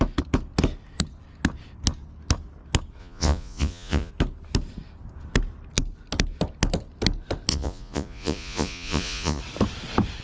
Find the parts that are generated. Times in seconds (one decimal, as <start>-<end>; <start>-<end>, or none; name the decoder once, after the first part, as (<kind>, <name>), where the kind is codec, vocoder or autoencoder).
3.0-4.1 (vocoder, Vocos); 7.5-9.4